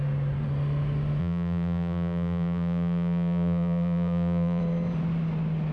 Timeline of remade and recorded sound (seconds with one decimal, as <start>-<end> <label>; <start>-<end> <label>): 0.0-1.2 recorded; 1.2-4.6 remade; 4.6-5.7 recorded